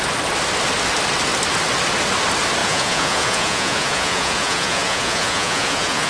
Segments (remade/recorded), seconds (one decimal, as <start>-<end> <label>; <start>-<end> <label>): 0.0-2.6 recorded; 2.6-6.1 remade